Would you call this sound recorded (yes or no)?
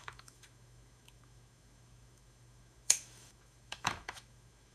no